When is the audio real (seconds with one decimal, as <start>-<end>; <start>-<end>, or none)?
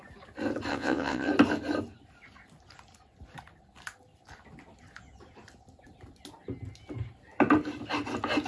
0.0-0.7; 1.3-8.5